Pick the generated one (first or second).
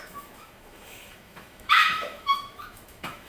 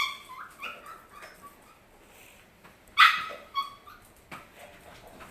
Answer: first